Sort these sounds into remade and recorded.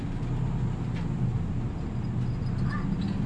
recorded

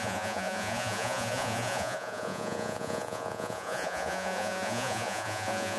remade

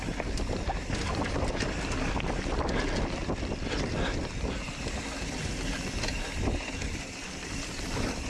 recorded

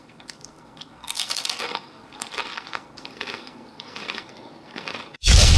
remade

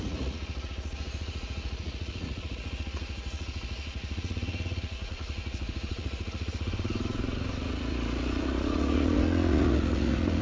remade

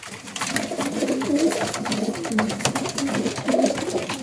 recorded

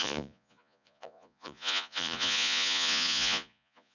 remade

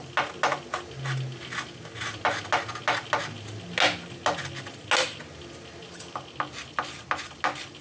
recorded